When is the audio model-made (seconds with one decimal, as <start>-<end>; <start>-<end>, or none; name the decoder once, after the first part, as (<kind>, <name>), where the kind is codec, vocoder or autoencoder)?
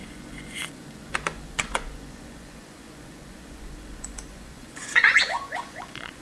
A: 0.0-6.2 (vocoder, Vocos)